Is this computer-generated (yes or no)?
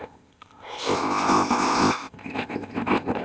yes